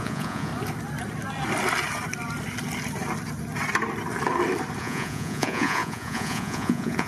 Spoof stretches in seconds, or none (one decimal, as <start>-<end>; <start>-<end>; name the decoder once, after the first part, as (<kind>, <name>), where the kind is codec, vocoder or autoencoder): 0.0-0.5 (vocoder, Vocos); 4.8-7.1